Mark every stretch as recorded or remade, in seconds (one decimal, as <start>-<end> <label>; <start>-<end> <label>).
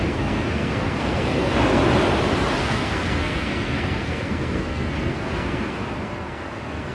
0.0-1.8 remade; 1.8-2.6 recorded; 2.6-6.9 remade